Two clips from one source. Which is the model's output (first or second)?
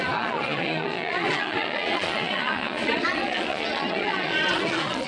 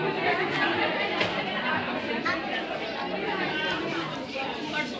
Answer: first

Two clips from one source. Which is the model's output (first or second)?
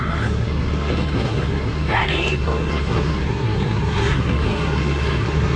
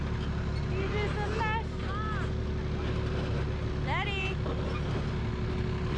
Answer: first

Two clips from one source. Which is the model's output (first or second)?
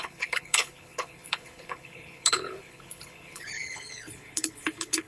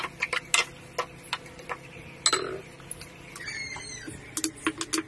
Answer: first